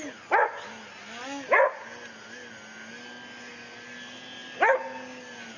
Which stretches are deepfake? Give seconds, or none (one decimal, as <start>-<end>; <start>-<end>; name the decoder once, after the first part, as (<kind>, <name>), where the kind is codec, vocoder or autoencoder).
none

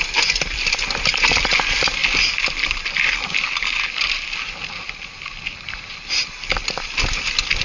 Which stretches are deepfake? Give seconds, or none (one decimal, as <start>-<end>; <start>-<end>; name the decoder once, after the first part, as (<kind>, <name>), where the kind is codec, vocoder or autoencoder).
none